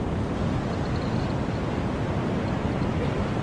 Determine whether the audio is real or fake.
real